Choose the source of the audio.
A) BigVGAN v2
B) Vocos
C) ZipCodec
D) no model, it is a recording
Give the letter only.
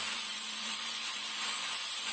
B